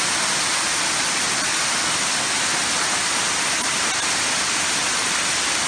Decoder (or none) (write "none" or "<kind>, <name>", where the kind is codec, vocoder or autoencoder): none